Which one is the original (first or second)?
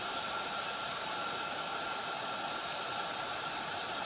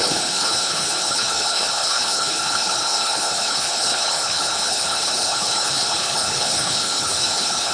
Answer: first